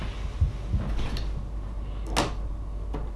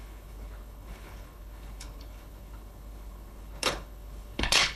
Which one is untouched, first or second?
first